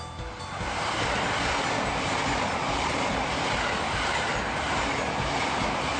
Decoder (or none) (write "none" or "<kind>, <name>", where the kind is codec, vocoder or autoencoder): none